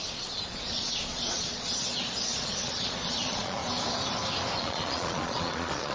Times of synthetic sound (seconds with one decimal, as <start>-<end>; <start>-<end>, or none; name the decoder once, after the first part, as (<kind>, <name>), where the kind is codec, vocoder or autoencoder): 0.0-3.6 (vocoder, Vocos); 4.6-5.9